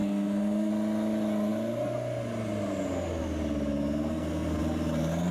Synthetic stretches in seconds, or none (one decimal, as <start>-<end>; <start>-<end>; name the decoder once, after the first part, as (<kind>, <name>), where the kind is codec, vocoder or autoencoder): 0.0-0.7 (codec, SNAC); 4.1-4.6